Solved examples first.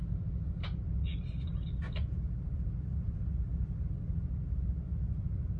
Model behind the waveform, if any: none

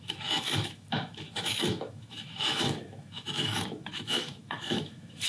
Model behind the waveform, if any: autoencoder, DAC-VAE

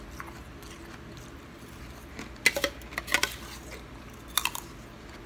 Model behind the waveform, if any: none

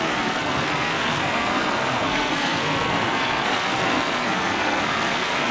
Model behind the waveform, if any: codec, SNAC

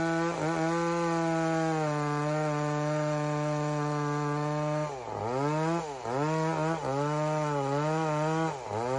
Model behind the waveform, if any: none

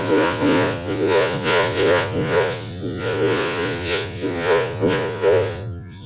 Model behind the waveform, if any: vocoder, Vocos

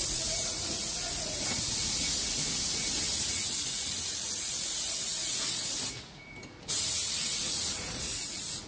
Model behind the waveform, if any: vocoder, Vocos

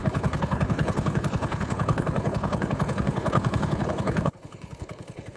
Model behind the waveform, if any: codec, HILCodec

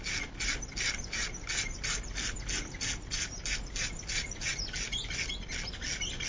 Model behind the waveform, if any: none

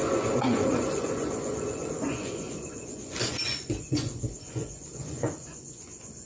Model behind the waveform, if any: vocoder, Vocos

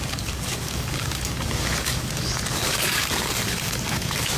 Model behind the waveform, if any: codec, DAC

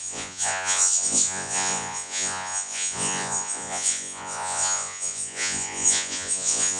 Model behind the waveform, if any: vocoder, Vocos